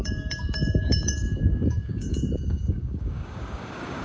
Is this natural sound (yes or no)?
no